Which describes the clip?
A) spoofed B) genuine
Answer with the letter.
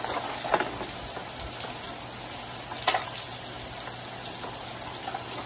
B